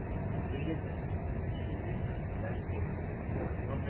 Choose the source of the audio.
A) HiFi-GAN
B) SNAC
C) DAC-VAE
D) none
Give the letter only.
D